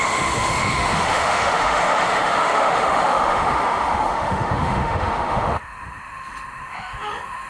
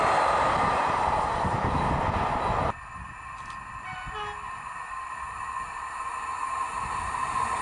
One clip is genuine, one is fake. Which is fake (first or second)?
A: first